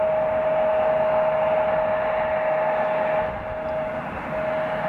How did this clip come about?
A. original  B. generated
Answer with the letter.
A